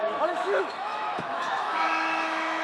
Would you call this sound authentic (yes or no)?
no